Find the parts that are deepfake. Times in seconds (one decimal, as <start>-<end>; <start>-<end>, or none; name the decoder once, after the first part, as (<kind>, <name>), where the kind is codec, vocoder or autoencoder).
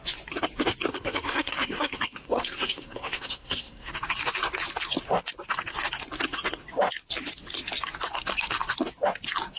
0.9-3.9 (codec, SNAC)